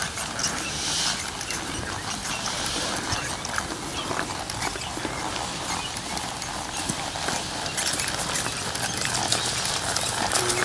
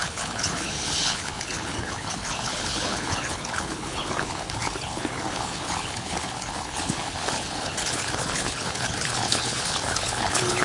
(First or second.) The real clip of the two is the first